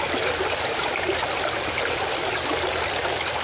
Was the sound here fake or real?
real